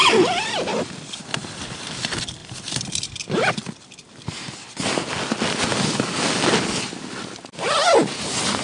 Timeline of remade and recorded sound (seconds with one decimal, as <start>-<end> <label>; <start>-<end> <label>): 0.0-1.8 remade; 1.8-2.4 recorded; 2.4-3.4 remade; 3.4-8.6 recorded